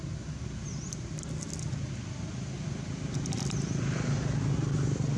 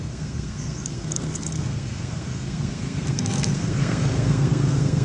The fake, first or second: second